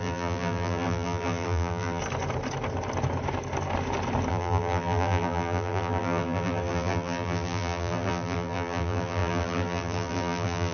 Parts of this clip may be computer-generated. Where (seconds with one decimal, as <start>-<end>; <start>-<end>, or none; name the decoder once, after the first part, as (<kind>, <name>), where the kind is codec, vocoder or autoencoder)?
0.0-2.0 (vocoder, BigVGAN v2); 4.3-10.7